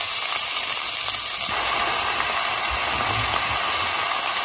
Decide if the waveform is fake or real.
real